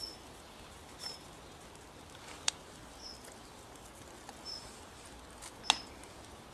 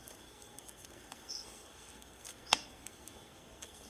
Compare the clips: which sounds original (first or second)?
first